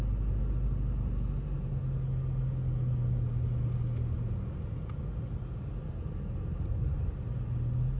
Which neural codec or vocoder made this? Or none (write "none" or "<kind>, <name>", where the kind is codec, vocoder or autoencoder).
none